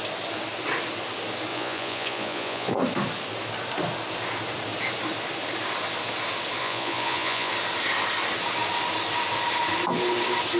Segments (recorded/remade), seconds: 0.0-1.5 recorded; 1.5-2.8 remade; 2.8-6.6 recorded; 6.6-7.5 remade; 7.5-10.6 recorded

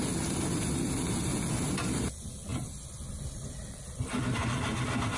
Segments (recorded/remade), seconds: 0.0-5.2 recorded

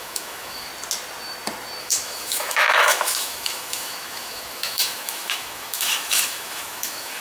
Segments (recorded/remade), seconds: 0.0-0.7 remade; 0.7-1.8 recorded; 1.8-7.2 remade